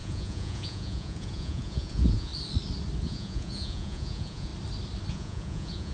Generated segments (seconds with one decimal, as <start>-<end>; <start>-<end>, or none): 0.0-2.3; 3.0-4.5; 5.1-5.9